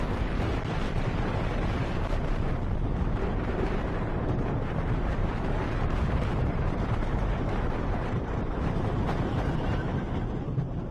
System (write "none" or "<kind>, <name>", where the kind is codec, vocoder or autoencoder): vocoder, BigVGAN v2